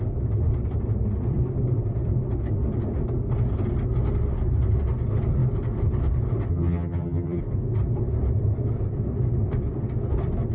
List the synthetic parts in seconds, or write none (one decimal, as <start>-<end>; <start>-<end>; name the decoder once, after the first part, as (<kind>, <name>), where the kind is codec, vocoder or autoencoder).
6.5-7.4 (vocoder, HiFi-GAN)